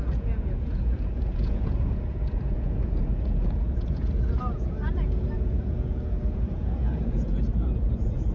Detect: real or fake fake